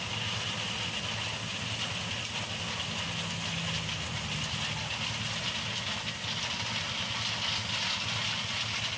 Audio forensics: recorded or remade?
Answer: recorded